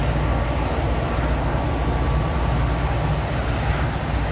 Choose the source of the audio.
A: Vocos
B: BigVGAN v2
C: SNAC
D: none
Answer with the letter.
D